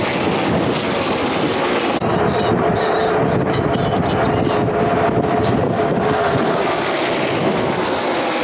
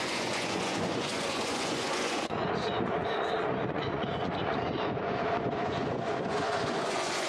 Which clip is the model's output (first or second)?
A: second